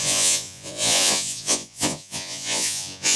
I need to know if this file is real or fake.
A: fake